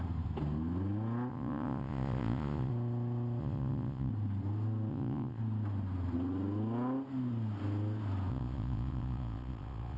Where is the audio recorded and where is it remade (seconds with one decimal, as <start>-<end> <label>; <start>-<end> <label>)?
0.0-1.3 recorded; 1.3-2.7 remade; 2.7-3.4 recorded; 3.4-4.1 remade; 4.1-4.9 recorded; 4.9-5.4 remade; 5.4-8.3 recorded; 8.3-10.0 remade